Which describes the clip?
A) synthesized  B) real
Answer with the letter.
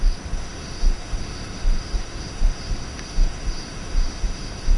A